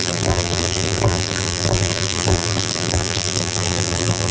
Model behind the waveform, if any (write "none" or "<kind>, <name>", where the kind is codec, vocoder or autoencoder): vocoder, BigVGAN v2